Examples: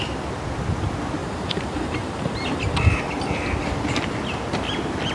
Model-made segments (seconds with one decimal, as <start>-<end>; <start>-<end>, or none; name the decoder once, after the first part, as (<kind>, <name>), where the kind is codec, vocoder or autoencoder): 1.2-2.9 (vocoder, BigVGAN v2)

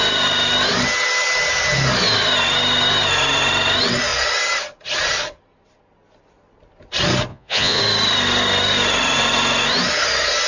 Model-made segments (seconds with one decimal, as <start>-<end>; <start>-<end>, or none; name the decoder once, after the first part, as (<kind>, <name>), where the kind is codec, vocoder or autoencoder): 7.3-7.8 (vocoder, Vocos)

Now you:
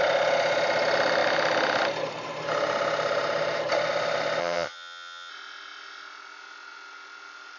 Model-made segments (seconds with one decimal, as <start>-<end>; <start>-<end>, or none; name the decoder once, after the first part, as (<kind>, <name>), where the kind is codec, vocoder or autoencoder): 4.4-5.3 (vocoder, HiFi-GAN)